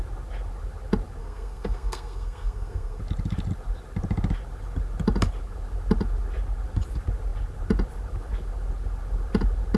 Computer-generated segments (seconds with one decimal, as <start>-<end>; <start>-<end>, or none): 1.2-3.0